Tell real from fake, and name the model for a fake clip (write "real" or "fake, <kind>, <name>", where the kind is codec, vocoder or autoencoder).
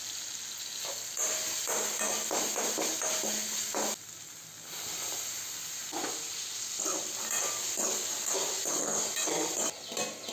real